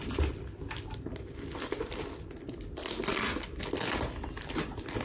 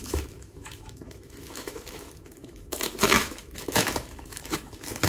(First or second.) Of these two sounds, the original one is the first